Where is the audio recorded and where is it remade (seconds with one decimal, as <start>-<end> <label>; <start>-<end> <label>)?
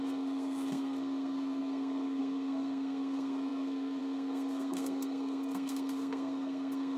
0.0-7.0 remade